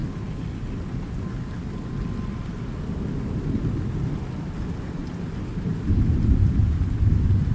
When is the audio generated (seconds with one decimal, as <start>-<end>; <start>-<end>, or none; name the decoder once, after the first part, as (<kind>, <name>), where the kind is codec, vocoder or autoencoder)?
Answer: 5.0-6.8 (vocoder, BigVGAN v2)